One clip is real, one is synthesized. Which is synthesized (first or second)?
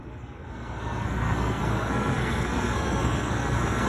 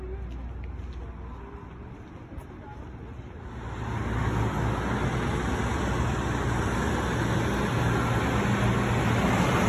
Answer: first